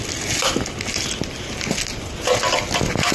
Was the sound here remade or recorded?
recorded